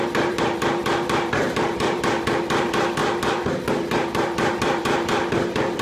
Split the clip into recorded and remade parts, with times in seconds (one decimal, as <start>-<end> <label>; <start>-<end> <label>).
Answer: 0.0-5.8 remade

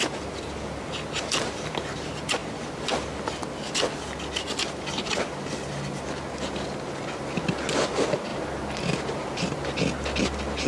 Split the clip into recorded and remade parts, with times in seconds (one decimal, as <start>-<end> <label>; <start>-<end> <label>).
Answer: 0.0-10.7 recorded

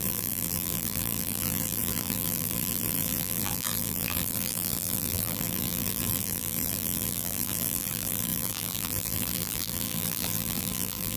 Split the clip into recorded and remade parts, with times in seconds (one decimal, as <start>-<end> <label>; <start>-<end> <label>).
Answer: 0.0-11.2 remade

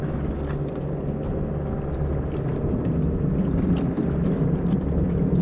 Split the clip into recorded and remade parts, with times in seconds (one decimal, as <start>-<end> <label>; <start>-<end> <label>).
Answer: 0.0-2.1 recorded; 2.1-5.4 remade

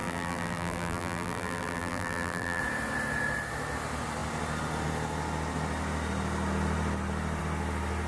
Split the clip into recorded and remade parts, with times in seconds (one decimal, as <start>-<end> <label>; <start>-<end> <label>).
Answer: 0.0-2.6 remade; 2.6-8.1 recorded

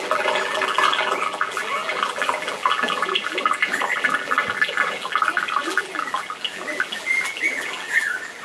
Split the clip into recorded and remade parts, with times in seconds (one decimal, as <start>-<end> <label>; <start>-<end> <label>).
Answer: 0.0-8.4 remade

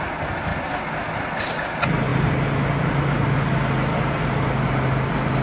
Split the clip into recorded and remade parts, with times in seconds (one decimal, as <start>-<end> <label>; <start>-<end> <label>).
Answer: 0.0-2.1 recorded; 2.1-4.1 remade; 4.1-5.4 recorded

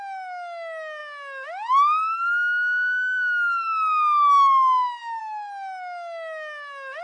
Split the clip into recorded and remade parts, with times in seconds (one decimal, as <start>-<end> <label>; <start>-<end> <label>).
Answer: 0.0-7.0 recorded